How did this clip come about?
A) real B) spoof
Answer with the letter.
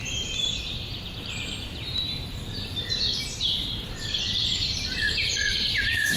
B